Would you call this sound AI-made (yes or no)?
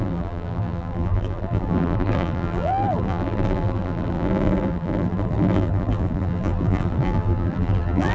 yes